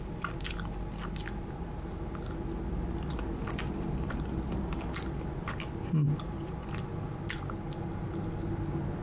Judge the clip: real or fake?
real